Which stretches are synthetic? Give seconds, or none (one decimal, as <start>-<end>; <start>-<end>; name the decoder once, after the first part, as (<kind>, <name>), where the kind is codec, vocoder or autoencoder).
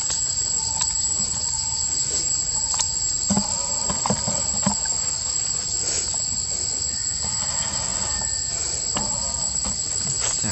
none